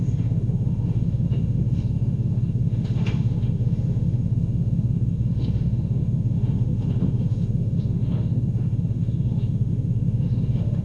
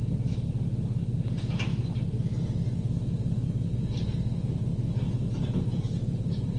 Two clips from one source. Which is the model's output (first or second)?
first